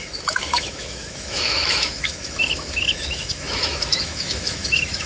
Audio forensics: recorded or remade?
remade